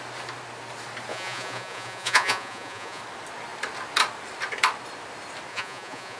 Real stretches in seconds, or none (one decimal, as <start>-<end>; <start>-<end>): 0.0-1.1; 3.0-5.5